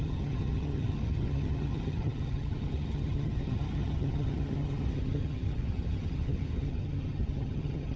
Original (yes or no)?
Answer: no